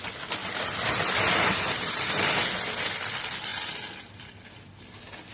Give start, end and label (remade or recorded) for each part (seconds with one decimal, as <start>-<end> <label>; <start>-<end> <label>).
0.0-0.4 recorded; 0.4-2.1 remade; 2.1-5.3 recorded